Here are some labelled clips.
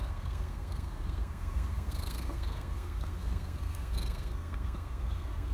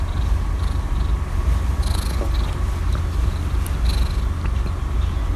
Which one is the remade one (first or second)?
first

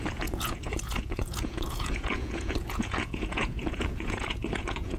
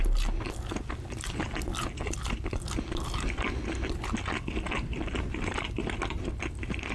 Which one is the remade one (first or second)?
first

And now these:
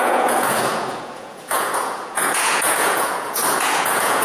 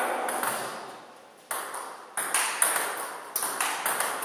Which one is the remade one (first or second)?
first